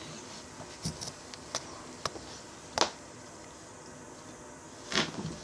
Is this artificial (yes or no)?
no